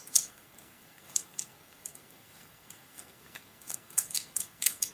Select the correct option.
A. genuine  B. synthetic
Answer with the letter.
B